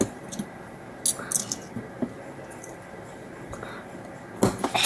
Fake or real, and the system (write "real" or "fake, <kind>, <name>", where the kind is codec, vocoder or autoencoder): real